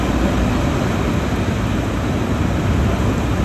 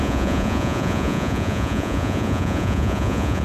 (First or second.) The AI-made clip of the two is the second